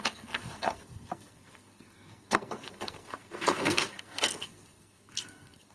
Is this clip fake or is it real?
fake